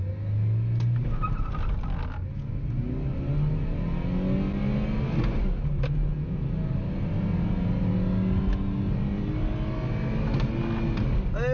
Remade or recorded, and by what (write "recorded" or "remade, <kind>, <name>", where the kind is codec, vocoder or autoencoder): recorded